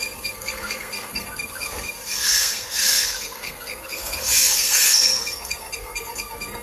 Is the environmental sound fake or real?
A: fake